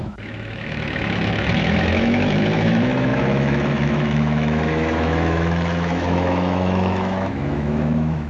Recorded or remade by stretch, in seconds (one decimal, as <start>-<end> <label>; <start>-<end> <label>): 0.0-8.3 remade